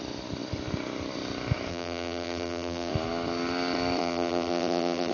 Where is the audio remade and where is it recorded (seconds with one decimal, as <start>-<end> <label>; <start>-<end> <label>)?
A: 0.0-1.7 recorded; 1.7-2.9 remade; 2.9-4.0 recorded; 4.0-5.1 remade